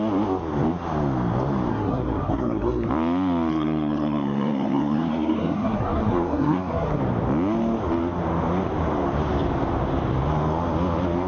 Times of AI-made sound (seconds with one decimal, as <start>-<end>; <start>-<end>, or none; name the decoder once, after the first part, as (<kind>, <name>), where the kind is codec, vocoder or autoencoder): 1.7-2.9 (codec, SNAC); 3.5-7.0